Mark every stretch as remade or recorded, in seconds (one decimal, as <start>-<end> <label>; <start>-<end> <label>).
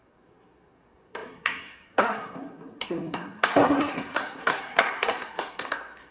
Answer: 0.0-6.1 remade